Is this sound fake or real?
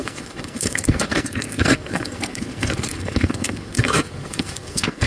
fake